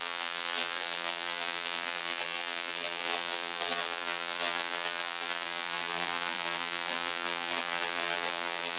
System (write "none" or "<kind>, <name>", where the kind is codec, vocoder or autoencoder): vocoder, BigVGAN v2